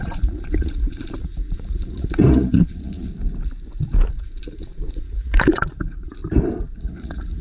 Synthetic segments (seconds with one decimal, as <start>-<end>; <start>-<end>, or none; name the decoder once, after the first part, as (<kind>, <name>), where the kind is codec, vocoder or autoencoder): 0.0-3.1 (vocoder, Vocos); 4.1-6.2; 6.8-7.4